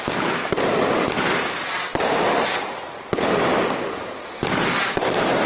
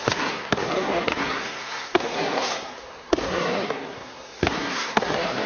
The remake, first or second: second